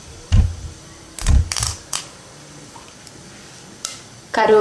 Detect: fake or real fake